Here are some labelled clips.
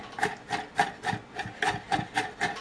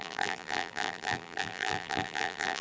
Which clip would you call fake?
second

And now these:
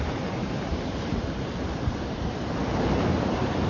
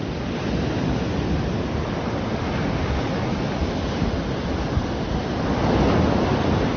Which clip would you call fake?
first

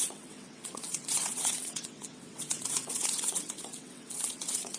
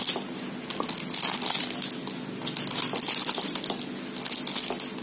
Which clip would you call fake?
first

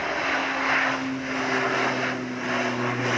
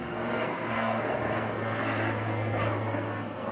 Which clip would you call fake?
second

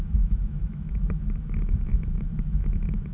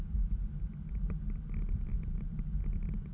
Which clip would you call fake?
first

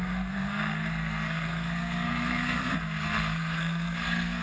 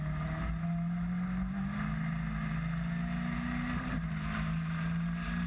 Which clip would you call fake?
first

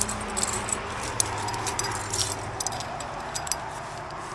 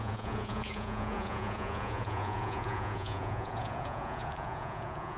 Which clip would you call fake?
second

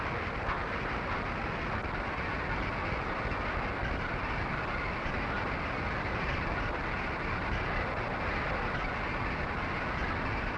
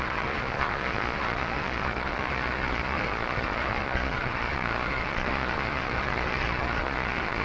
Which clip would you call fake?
second